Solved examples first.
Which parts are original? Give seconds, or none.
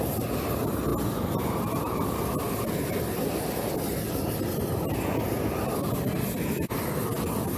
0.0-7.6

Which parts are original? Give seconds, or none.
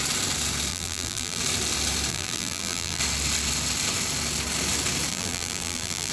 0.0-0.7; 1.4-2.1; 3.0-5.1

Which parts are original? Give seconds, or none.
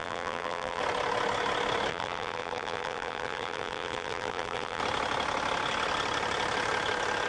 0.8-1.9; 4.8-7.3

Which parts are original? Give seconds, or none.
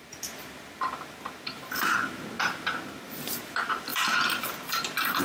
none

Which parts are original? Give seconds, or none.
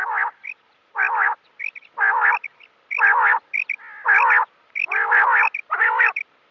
1.6-5.5